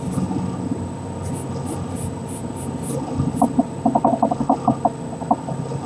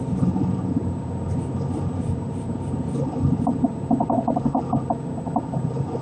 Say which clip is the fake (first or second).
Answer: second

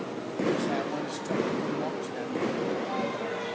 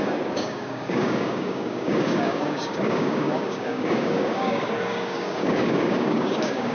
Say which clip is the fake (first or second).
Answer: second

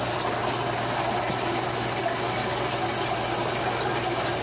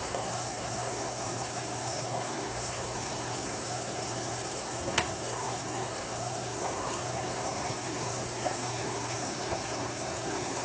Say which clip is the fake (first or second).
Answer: second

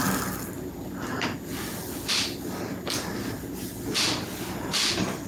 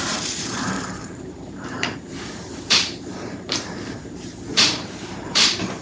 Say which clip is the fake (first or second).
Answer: second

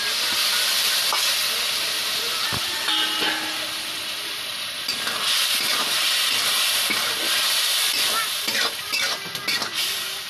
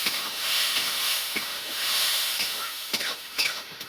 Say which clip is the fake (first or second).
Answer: second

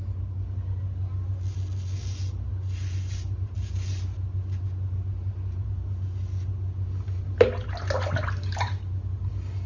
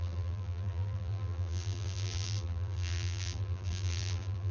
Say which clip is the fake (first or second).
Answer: second